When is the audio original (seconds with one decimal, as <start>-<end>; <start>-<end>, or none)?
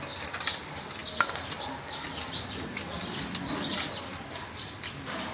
0.0-5.3